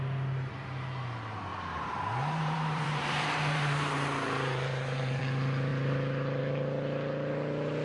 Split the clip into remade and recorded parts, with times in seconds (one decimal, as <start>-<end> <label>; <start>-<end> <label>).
0.0-1.5 recorded; 1.5-5.2 remade; 5.2-7.8 recorded